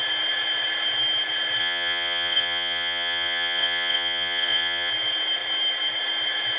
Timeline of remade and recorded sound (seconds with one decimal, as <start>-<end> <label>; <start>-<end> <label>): 0.0-1.6 recorded; 1.6-4.9 remade; 4.9-6.6 recorded